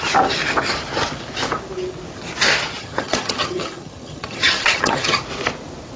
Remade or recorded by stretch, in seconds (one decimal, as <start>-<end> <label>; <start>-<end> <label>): 0.0-2.8 recorded; 2.8-5.2 remade; 5.2-6.0 recorded